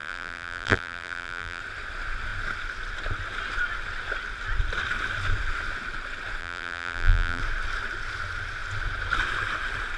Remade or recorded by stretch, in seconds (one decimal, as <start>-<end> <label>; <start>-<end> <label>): 0.0-1.6 remade; 1.6-6.4 recorded; 6.4-7.4 remade; 7.4-10.0 recorded